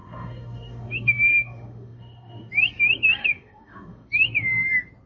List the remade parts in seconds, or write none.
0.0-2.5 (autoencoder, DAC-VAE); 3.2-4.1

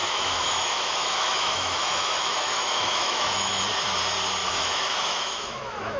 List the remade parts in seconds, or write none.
0.0-3.6 (autoencoder, DAC-VAE); 4.4-6.0

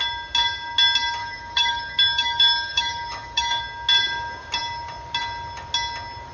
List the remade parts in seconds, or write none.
1.2-3.6 (autoencoder, DAC-VAE)

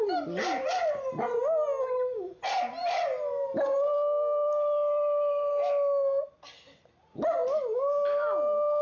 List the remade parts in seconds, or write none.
none